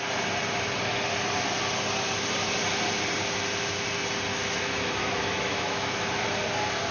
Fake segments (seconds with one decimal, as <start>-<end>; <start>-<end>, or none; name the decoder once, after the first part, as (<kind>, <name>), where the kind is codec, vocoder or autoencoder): 4.3-6.2 (autoencoder, DAC-VAE)